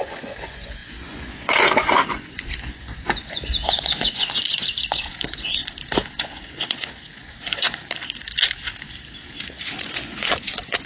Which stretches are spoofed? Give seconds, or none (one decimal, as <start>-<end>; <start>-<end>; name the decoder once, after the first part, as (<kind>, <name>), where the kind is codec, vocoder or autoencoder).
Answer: 0.0-5.6 (vocoder, Vocos); 6.2-7.8; 9.6-10.9